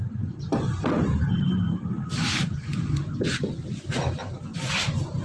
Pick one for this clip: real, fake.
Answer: fake